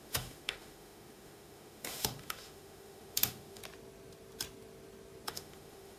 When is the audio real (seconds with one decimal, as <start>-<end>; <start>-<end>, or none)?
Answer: 3.6-5.3